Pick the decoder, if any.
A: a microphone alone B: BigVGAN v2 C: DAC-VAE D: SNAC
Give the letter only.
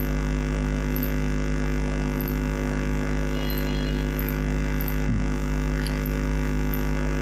A